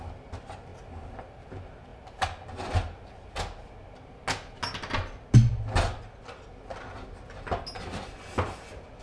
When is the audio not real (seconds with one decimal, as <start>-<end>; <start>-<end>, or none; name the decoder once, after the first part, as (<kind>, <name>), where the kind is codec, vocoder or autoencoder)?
none